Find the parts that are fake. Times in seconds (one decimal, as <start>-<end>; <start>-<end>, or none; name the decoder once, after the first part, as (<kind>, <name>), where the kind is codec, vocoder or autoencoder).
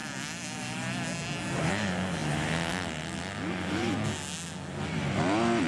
none